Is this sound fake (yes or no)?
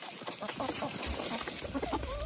yes